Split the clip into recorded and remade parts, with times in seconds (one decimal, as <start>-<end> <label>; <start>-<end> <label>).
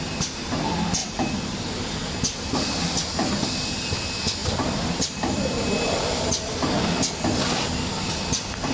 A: 0.0-1.0 recorded; 1.0-1.6 remade; 1.6-4.4 recorded; 4.4-6.7 remade; 6.7-8.7 recorded